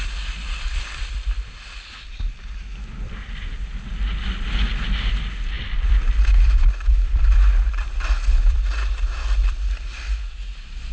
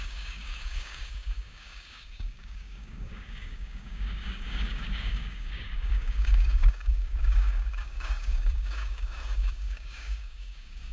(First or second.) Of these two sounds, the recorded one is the first